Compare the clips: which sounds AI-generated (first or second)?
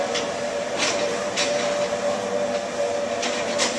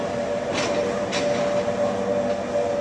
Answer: first